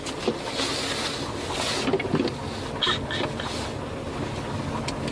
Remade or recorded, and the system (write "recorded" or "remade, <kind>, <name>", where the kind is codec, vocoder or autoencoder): recorded